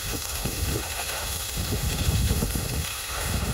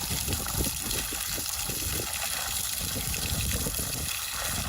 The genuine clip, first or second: second